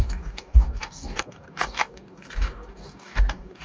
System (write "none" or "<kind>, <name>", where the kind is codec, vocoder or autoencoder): codec, DAC